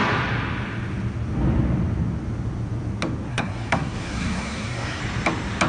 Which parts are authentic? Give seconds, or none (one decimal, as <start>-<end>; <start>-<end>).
0.0-3.3; 5.0-5.7

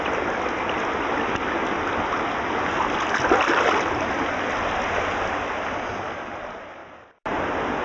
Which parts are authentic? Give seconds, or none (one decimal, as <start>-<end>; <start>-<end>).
0.0-7.8